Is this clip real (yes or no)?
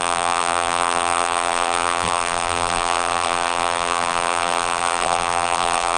no